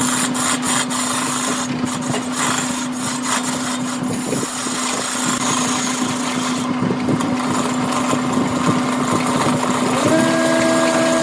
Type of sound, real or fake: real